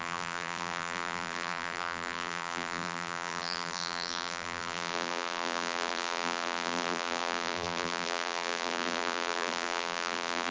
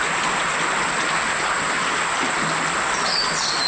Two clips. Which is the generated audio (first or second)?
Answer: first